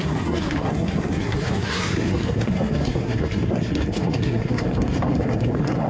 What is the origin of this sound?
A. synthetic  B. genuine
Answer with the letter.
A